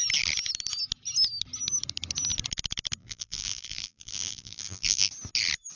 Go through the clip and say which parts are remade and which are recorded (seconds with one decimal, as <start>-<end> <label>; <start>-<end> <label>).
0.0-3.0 recorded; 3.0-5.1 remade; 5.1-5.8 recorded